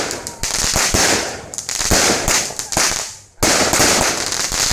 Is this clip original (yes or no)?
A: yes